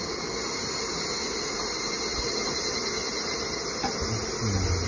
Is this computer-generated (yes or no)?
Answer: no